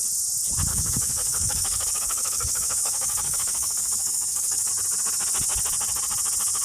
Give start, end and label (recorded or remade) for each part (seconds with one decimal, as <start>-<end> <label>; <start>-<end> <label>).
0.0-0.7 recorded; 0.7-4.7 remade; 4.7-6.6 recorded